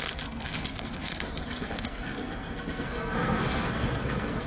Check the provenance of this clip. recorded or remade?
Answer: remade